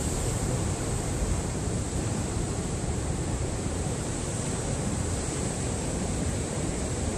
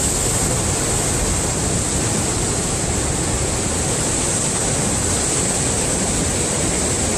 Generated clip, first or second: first